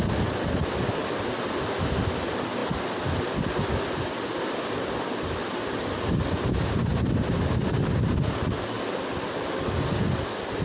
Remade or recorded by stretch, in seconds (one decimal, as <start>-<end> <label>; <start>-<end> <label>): 0.0-10.6 recorded